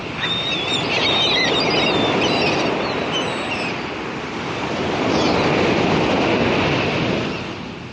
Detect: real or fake real